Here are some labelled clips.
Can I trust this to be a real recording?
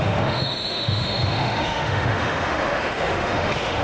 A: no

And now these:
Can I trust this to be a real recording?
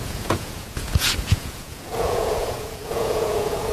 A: no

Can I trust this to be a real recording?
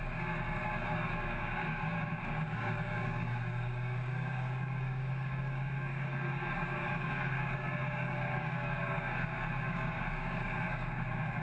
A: no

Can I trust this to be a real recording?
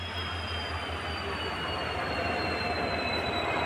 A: yes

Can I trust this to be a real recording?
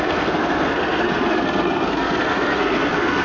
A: no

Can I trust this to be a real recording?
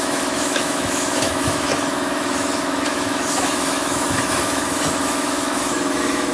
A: no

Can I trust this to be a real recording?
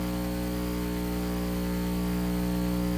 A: yes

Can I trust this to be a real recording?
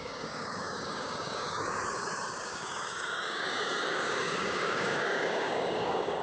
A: no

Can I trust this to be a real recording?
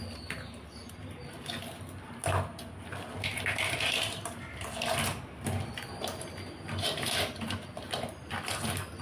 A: yes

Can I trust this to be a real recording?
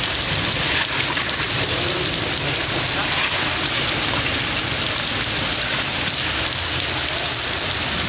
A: yes